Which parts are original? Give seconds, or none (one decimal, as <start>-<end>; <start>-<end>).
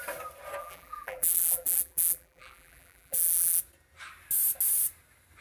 0.0-0.6; 3.6-5.4